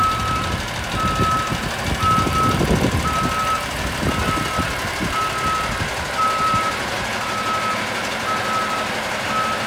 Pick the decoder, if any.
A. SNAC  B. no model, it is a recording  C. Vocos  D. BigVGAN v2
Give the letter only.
B